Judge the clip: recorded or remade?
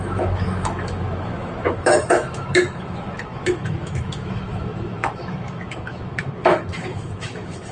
remade